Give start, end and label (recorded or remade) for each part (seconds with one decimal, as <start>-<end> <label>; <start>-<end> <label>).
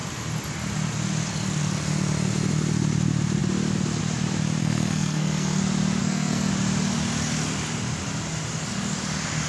0.0-4.6 recorded; 4.6-5.6 remade; 5.6-6.0 recorded; 6.0-6.5 remade; 6.5-9.5 recorded